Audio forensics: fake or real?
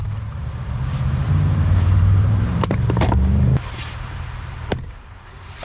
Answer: fake